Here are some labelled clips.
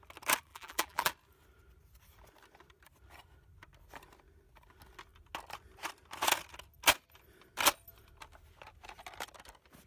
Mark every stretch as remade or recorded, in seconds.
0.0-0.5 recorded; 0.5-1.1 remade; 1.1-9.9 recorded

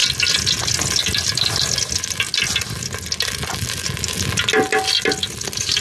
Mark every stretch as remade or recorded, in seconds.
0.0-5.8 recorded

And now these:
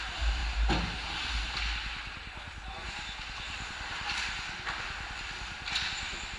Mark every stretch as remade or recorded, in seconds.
0.0-6.4 recorded